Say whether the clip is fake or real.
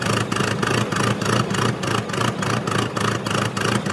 real